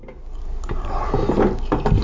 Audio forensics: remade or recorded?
recorded